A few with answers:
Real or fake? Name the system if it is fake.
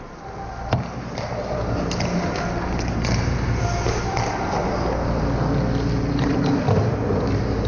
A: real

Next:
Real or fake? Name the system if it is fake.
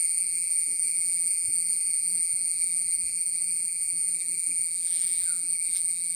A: fake, vocoder, BigVGAN v2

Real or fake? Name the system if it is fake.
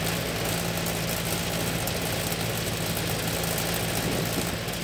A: real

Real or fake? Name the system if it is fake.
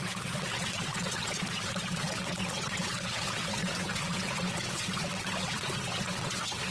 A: fake, vocoder, WaveNeXt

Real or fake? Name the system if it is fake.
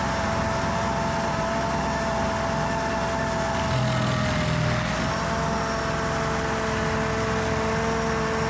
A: real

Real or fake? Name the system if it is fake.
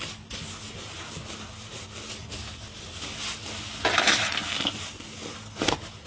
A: real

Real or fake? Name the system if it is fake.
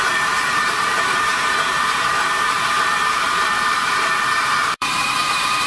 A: fake, vocoder, BigVGAN v2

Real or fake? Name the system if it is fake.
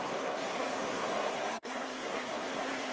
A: fake, codec, SNAC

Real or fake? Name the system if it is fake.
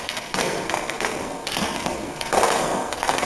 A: fake, codec, SNAC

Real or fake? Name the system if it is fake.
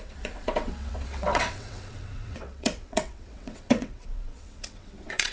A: fake, vocoder, WaveNeXt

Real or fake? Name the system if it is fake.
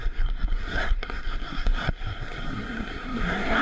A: fake, codec, SNAC